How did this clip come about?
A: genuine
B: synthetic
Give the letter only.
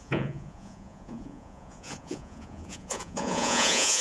B